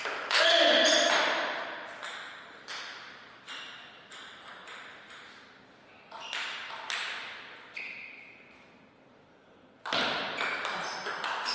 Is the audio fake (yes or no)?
no